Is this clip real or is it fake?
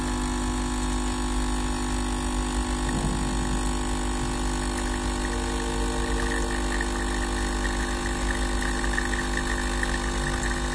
real